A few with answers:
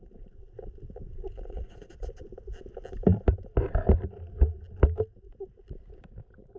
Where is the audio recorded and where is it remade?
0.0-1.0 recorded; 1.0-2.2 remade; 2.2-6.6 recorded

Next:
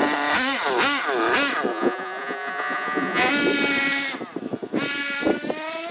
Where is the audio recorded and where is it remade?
0.0-1.7 recorded; 1.7-3.3 remade; 3.3-5.9 recorded

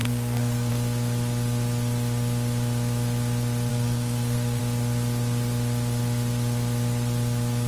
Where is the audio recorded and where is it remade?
0.0-0.7 remade; 0.7-3.7 recorded; 3.7-4.6 remade; 4.6-7.7 recorded

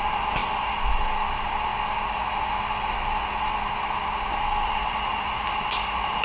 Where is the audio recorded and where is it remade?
0.0-6.2 recorded

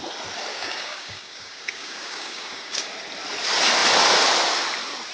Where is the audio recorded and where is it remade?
0.0-0.5 recorded; 0.5-2.9 remade; 2.9-5.1 recorded

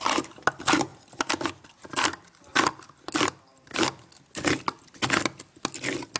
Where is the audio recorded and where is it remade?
0.0-6.2 recorded

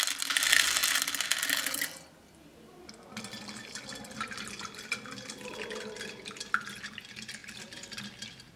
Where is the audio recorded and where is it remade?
0.0-7.4 recorded; 7.4-8.0 remade; 8.0-8.6 recorded

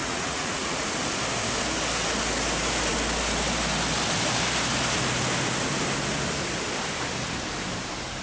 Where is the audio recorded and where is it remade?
0.0-0.9 remade; 0.9-8.2 recorded